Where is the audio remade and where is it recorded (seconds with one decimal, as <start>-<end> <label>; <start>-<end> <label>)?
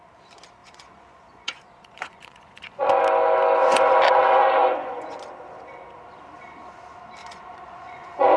0.0-0.6 recorded; 0.6-3.0 remade; 3.0-3.6 recorded; 3.6-5.2 remade; 5.2-7.2 recorded; 7.2-8.4 remade